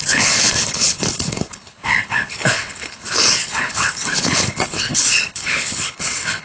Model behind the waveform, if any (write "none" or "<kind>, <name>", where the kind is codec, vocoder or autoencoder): codec, HILCodec